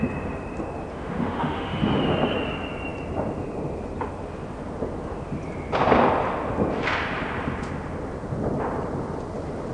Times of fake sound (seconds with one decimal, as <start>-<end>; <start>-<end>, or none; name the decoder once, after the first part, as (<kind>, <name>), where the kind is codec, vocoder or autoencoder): 0.9-1.8 (autoencoder, DAC-VAE)